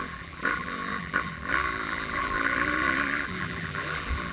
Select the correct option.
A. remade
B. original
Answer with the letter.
A